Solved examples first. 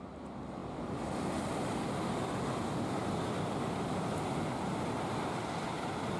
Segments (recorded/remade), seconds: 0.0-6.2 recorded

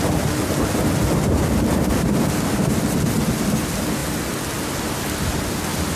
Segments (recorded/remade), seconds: 0.0-6.0 recorded

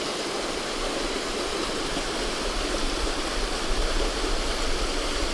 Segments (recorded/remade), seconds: 0.0-5.3 recorded